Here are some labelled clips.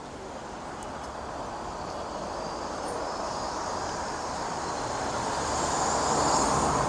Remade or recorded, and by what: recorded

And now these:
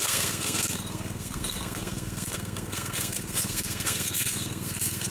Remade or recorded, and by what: remade, codec, SNAC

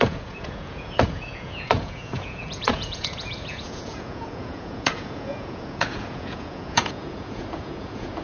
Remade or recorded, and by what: remade, vocoder, Vocos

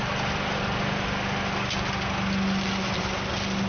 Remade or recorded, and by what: recorded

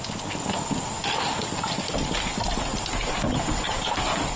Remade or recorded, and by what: recorded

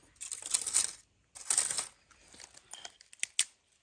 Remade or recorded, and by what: recorded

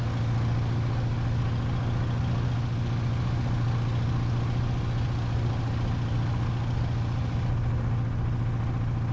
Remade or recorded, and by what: recorded